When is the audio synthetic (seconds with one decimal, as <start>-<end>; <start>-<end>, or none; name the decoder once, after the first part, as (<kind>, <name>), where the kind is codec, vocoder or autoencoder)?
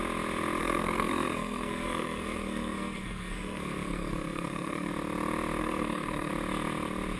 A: 0.6-4.9 (codec, SNAC); 5.6-6.3